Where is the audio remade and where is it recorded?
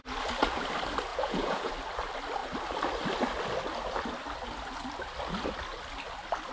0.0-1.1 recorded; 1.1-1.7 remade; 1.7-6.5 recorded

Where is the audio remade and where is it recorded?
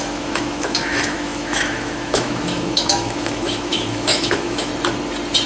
0.0-4.7 remade; 4.7-5.5 recorded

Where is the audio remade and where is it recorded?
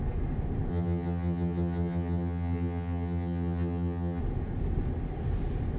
0.0-0.7 recorded; 0.7-4.2 remade; 4.2-5.8 recorded